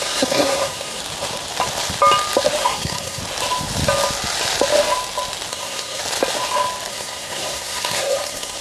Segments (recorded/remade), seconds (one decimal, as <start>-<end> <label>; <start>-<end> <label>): 0.0-1.0 remade; 1.0-2.6 recorded; 2.6-3.2 remade; 3.2-5.5 recorded; 5.5-6.0 remade; 6.0-6.9 recorded; 6.9-8.6 remade